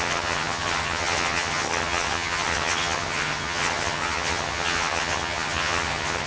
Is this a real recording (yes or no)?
no